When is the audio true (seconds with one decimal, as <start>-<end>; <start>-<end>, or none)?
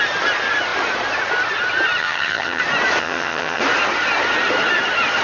0.0-2.0; 2.6-3.0; 3.6-5.2